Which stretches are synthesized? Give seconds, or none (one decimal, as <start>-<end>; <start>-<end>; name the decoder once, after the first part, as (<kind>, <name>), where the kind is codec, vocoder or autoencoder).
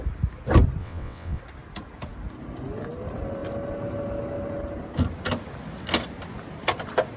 0.8-1.4 (vocoder, WaveNeXt)